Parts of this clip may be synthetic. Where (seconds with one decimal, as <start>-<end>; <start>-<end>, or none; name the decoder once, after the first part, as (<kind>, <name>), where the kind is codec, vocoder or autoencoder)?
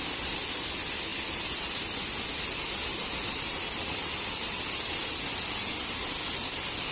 none